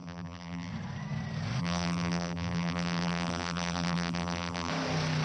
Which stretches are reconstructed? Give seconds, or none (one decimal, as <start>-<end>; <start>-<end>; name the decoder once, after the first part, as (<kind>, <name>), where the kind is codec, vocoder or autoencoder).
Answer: 0.0-0.7 (vocoder, BigVGAN v2); 1.6-4.7

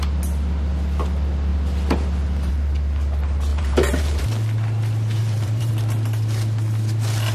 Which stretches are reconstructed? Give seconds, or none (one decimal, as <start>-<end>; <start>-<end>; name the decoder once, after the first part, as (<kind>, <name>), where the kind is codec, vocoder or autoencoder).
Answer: 3.5-4.2 (vocoder, BigVGAN v2); 5.2-5.7

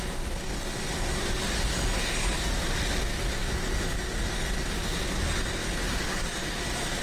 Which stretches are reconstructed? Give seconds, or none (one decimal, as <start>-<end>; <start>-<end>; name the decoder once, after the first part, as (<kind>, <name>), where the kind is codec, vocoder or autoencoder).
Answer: none